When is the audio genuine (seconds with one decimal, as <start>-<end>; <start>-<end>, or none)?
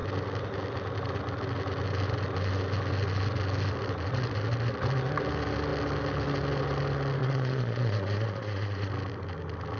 0.0-7.2; 8.9-9.8